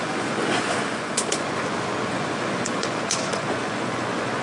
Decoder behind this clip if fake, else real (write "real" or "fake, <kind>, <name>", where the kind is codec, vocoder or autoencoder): fake, vocoder, Vocos